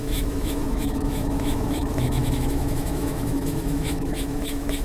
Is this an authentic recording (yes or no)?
no